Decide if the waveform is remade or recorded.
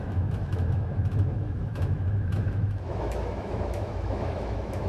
remade